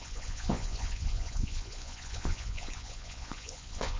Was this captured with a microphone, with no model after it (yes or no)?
no